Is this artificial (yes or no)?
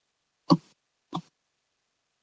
no